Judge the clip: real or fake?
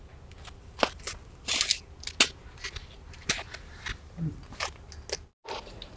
real